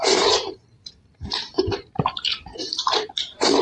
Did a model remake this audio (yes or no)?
yes